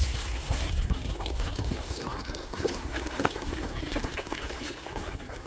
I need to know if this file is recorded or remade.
remade